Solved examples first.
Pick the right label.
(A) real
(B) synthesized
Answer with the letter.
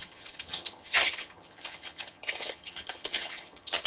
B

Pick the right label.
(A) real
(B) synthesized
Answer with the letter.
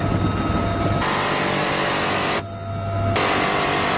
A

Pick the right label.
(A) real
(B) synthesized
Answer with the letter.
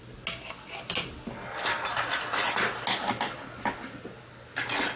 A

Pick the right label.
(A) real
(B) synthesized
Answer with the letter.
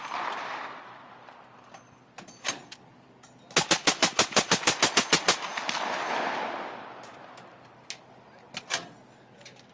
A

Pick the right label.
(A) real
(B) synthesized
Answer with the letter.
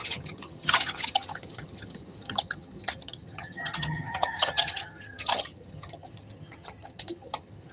B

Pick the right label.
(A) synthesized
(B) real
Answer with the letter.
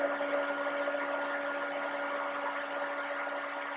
B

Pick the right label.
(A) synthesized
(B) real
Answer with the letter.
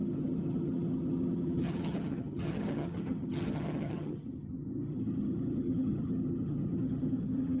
A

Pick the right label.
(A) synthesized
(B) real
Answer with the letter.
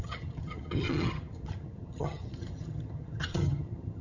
A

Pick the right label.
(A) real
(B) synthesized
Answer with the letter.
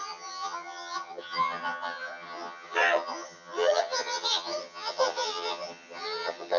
B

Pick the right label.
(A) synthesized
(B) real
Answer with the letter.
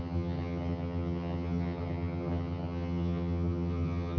A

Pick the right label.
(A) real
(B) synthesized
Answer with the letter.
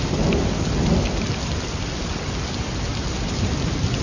A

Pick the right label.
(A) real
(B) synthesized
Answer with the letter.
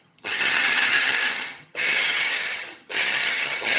B